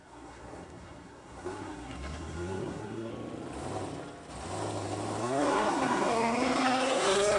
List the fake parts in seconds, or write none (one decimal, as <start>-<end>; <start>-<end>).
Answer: 0.0-3.1; 5.2-7.4